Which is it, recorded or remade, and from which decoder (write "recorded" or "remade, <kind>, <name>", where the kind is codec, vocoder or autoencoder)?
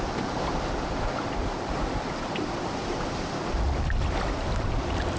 remade, vocoder, BigVGAN v2